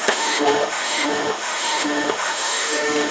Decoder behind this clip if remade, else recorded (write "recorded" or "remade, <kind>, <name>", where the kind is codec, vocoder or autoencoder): remade, autoencoder, DAC-VAE